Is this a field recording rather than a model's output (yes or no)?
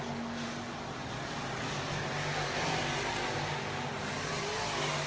yes